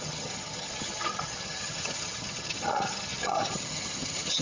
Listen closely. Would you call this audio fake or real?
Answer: fake